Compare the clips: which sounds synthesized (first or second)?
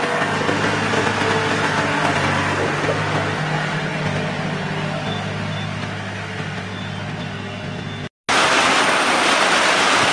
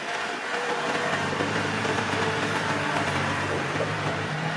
second